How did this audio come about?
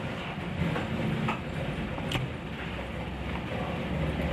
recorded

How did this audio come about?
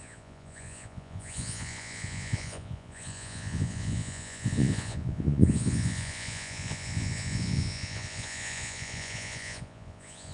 remade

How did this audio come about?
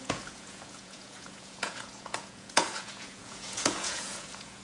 remade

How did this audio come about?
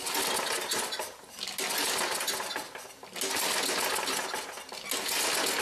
recorded